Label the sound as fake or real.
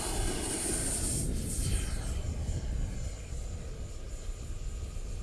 real